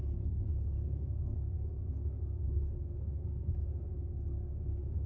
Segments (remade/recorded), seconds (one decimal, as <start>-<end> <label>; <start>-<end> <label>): 0.0-5.1 remade